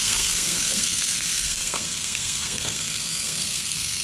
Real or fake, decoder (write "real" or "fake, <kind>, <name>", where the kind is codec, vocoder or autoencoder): fake, codec, SNAC